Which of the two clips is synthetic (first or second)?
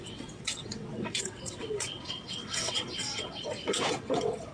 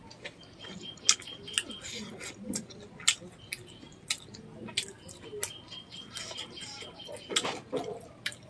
first